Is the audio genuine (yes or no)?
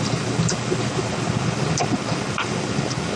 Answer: yes